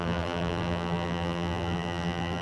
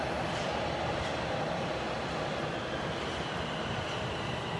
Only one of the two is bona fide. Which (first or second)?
second